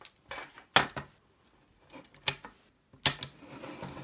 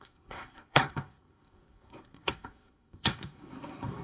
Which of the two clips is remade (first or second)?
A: second